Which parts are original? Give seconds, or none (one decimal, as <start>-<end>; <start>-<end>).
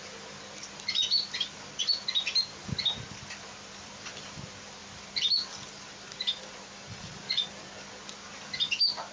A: 0.0-6.9; 7.4-9.1